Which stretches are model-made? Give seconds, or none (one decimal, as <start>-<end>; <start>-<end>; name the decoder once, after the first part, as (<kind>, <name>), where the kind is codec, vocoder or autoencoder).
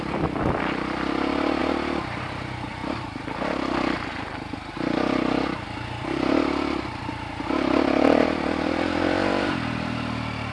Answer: 0.0-1.6 (vocoder, BigVGAN v2); 2.2-2.8; 6.0-10.5